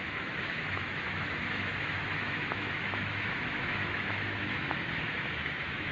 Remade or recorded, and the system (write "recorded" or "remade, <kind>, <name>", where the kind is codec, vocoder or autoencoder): remade, autoencoder, DAC-VAE